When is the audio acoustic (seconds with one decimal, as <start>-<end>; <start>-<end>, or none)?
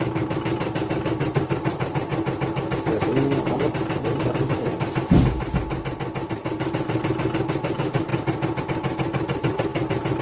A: 2.1-3.5; 4.5-6.7; 8.1-8.6